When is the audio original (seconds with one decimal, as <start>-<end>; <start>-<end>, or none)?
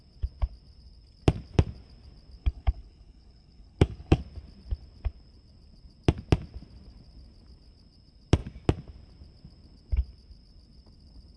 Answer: 0.0-2.4; 4.2-11.4